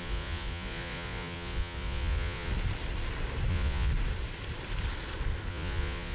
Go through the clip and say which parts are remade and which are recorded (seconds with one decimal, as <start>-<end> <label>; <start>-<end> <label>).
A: 0.0-2.5 remade; 2.5-3.5 recorded; 3.5-3.9 remade; 3.9-5.5 recorded; 5.5-6.1 remade

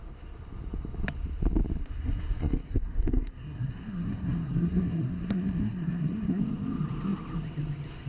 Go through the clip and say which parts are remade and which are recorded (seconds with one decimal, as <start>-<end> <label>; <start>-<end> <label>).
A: 0.0-1.8 recorded; 1.8-6.4 remade; 6.4-8.1 recorded

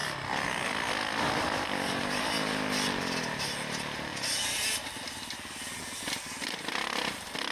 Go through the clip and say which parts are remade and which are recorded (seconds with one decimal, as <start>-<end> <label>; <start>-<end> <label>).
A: 0.0-7.5 recorded

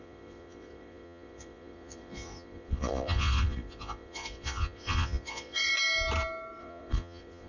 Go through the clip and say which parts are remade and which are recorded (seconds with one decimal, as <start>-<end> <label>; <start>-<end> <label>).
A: 0.0-5.7 remade; 5.7-6.6 recorded; 6.6-7.5 remade

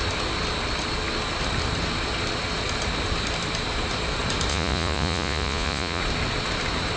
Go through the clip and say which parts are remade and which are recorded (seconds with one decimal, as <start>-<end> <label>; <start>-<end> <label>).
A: 0.0-4.5 recorded; 4.5-6.0 remade; 6.0-7.0 recorded

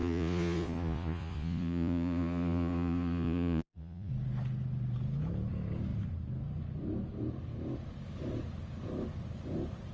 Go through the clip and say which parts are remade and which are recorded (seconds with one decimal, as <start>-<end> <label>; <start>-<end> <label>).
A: 0.0-4.1 remade; 4.1-9.9 recorded